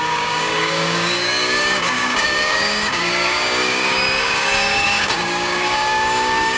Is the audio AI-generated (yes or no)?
yes